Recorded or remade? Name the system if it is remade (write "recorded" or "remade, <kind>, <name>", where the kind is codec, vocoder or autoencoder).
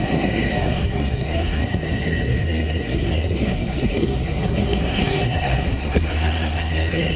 remade, codec, SNAC